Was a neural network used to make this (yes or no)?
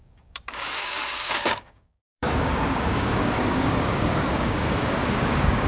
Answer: yes